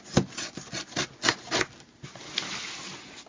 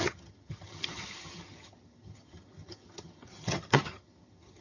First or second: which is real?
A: first